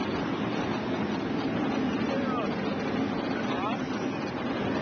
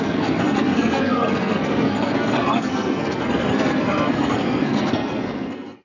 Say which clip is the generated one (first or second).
second